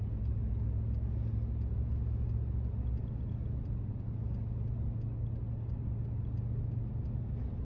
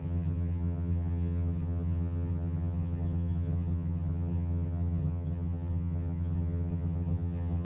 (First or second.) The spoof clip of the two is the second